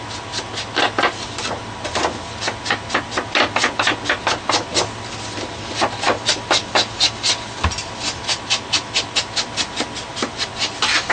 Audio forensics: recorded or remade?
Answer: recorded